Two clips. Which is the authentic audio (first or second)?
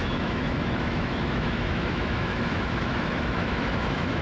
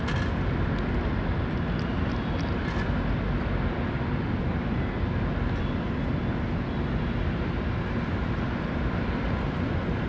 second